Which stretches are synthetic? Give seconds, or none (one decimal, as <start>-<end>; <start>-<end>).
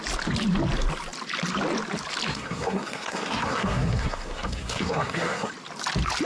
2.3-5.5